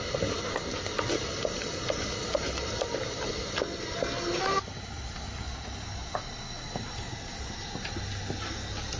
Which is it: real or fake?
real